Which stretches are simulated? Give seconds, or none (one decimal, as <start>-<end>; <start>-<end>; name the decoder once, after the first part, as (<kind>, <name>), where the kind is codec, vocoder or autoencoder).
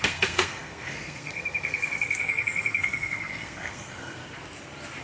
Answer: 0.0-4.2 (codec, SNAC)